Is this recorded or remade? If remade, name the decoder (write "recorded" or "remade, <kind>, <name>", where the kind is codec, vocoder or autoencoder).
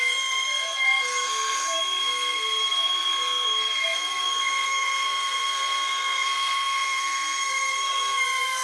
remade, codec, SNAC